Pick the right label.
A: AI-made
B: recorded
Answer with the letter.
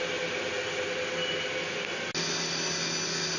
B